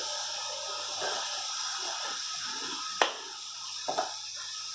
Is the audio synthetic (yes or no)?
no